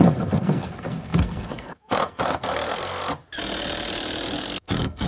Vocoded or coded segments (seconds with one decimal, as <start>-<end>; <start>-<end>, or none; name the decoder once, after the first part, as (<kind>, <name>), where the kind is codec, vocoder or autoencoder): 0.0-3.0 (codec, SNAC); 4.4-5.1